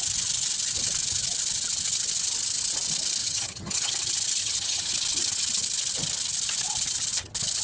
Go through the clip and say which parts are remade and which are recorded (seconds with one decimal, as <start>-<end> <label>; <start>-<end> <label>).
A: 0.0-3.2 recorded; 3.2-3.9 remade; 3.9-4.4 recorded; 4.4-4.9 remade; 4.9-7.6 recorded